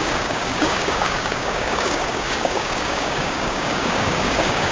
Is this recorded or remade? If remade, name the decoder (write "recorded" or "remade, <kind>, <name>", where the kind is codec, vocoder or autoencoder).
remade, codec, DAC